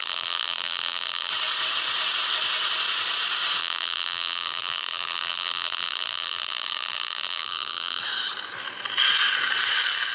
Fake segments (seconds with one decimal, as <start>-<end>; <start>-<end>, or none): 0.0-1.3; 3.6-8.0